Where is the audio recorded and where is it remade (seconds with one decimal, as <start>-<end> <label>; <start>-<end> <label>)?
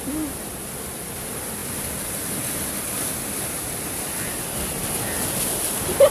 0.0-6.1 recorded